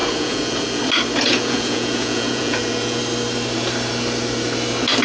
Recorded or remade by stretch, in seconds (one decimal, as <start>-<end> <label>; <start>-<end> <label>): 0.0-0.8 remade; 0.8-1.3 recorded; 1.3-3.0 remade; 3.0-5.0 recorded